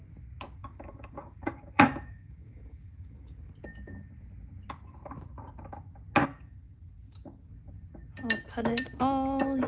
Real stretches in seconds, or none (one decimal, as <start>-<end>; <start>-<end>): 0.0-0.6; 3.5-6.2; 7.5-9.7